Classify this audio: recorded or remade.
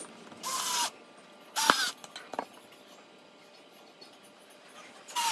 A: recorded